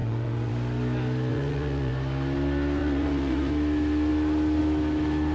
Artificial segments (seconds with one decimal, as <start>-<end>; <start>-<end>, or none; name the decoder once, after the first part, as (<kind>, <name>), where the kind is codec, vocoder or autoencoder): 0.0-0.5 (vocoder, Vocos); 1.3-1.9; 2.8-3.5